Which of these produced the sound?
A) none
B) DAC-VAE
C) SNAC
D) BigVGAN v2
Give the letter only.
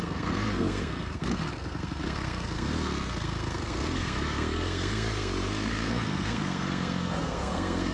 C